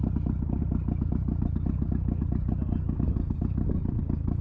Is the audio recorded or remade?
recorded